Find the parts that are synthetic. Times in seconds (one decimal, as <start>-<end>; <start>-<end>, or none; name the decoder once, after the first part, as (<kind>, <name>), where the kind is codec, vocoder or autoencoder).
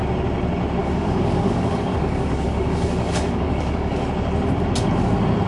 0.8-4.1 (codec, DAC)